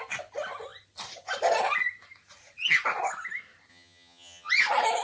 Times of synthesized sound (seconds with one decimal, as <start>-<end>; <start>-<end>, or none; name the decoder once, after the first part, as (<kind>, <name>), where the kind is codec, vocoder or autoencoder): 3.7-4.5 (vocoder, HiFi-GAN)